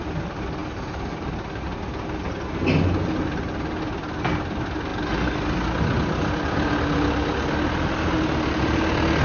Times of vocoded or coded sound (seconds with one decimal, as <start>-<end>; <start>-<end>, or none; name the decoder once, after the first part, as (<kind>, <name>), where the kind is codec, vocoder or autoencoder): none